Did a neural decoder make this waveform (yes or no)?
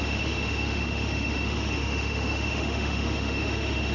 yes